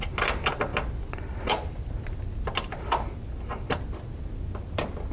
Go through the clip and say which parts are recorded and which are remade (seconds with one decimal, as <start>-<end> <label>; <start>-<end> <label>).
0.0-5.1 recorded